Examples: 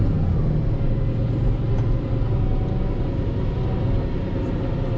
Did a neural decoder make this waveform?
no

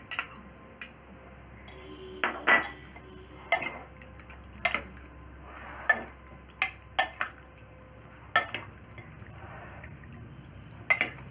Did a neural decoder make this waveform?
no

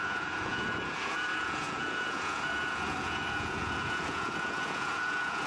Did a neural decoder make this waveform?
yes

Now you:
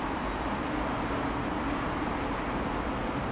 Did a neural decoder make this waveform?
no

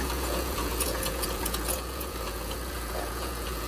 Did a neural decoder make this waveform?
yes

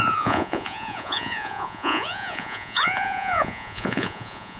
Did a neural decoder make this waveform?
yes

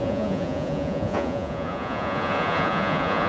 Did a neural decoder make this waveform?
yes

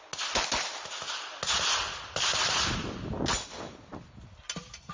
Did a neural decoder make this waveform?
no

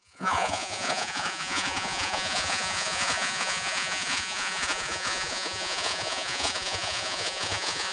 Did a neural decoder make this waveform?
yes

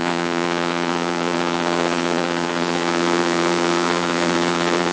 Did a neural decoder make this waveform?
yes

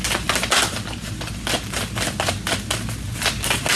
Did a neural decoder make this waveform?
no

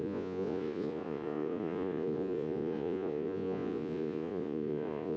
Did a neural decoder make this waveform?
yes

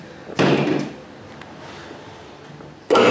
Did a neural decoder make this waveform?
no